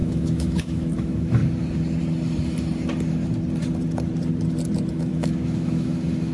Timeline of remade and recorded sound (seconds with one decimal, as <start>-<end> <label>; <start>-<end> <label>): 0.0-1.4 remade; 1.4-4.9 recorded; 4.9-6.3 remade